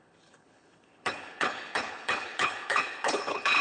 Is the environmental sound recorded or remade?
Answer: remade